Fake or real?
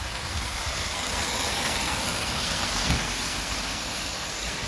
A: fake